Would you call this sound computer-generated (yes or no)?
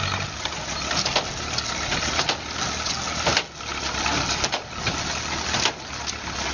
no